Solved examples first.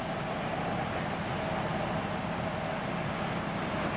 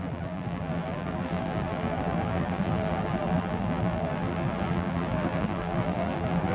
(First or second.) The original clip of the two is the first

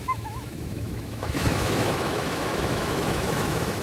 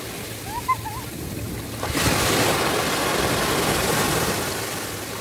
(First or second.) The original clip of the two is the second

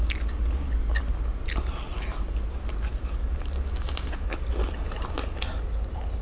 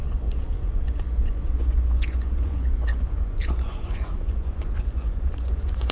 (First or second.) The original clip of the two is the first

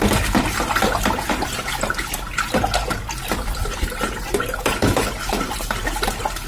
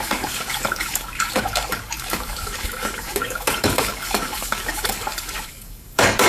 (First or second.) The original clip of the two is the first